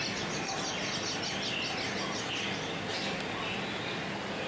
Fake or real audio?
real